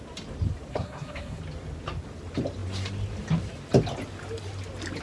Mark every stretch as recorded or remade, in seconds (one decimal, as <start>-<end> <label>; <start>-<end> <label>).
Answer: 0.0-0.7 recorded; 0.7-1.4 remade; 1.4-5.0 recorded